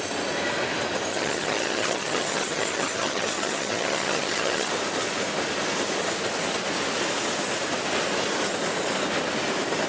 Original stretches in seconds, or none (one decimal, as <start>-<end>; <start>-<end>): 0.0-1.1; 4.7-9.9